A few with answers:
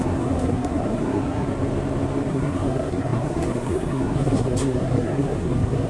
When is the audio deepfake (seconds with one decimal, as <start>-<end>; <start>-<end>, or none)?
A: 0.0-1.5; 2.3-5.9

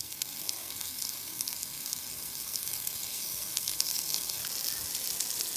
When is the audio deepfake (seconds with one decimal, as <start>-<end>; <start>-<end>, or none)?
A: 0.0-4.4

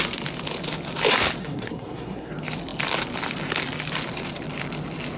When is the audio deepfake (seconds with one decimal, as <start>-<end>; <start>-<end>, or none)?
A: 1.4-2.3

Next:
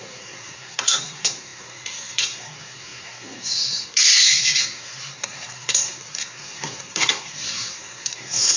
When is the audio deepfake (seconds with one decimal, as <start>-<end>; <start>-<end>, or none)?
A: 0.0-8.6

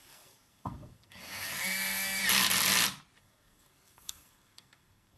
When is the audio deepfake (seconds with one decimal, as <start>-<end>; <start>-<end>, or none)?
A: 0.0-2.2; 3.2-5.2

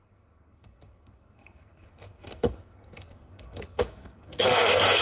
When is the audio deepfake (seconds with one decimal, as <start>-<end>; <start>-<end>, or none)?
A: 0.0-5.0

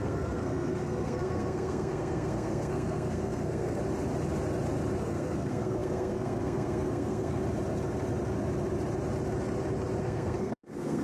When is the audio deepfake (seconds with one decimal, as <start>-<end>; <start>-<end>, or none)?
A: 0.0-3.8; 5.0-7.4; 10.0-11.0

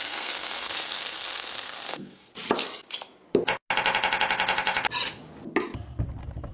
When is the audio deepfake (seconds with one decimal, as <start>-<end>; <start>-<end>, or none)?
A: 0.0-2.3